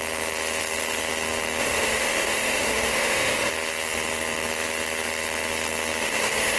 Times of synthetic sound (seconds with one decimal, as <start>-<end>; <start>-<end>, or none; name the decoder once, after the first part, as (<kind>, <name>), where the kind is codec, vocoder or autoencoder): 1.6-3.5 (autoencoder, DAC-VAE); 6.0-6.6